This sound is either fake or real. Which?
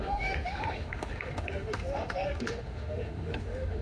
fake